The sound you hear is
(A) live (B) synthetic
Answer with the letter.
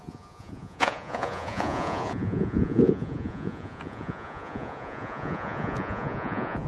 B